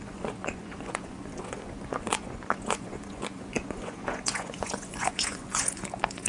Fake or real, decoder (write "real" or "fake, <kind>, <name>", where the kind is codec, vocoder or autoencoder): fake, vocoder, Vocos